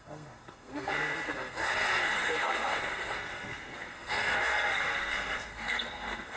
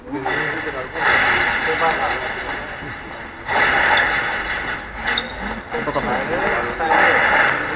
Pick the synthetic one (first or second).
first